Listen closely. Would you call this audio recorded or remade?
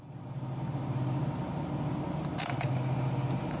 recorded